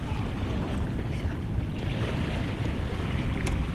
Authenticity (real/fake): real